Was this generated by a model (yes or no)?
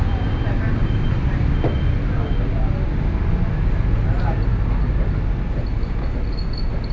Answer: no